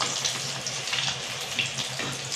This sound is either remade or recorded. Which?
recorded